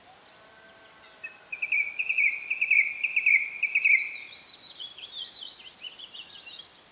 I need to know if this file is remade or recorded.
recorded